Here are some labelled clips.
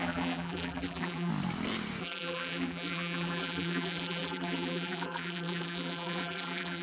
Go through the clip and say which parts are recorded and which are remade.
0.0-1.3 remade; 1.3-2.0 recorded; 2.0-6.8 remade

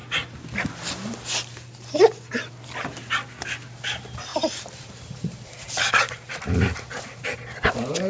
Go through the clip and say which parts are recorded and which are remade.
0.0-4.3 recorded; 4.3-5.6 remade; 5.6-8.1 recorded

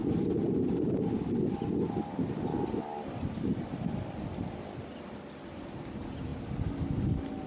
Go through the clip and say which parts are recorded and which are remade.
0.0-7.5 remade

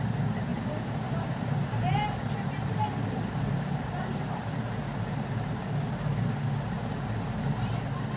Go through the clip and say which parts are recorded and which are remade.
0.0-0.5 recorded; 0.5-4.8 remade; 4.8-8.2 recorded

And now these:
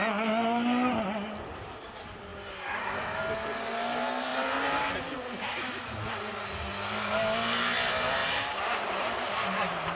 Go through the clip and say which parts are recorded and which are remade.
0.0-4.3 recorded; 4.3-4.9 remade; 4.9-8.2 recorded; 8.2-10.0 remade